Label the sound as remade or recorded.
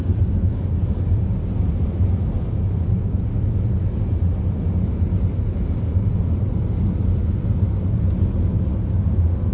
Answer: recorded